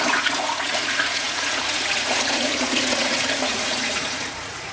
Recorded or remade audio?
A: remade